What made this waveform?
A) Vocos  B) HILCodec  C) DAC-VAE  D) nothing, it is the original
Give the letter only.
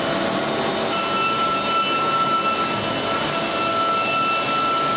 D